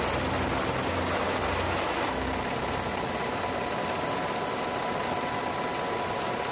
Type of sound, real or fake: real